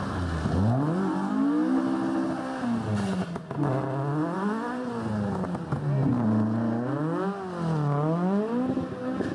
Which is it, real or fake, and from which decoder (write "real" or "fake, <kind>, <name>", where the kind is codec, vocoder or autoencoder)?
real